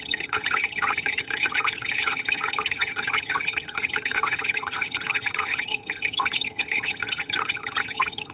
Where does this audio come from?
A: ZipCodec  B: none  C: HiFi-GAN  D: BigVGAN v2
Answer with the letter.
C